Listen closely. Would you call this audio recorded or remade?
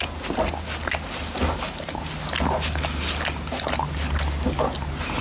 recorded